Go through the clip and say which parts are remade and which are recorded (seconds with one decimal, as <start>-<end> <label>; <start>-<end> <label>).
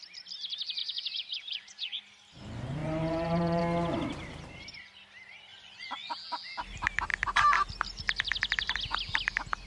0.0-0.8 recorded; 0.8-2.0 remade; 2.0-2.8 recorded; 2.8-3.6 remade; 3.6-5.5 recorded; 5.5-6.1 remade; 6.1-9.7 recorded